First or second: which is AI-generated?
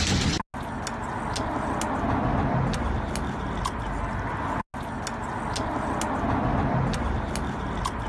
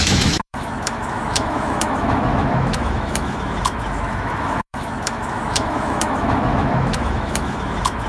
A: second